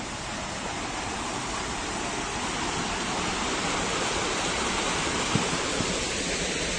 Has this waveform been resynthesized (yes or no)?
no